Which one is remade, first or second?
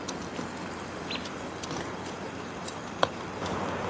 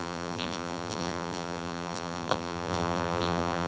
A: second